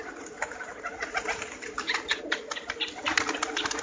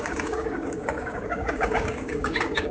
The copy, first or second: second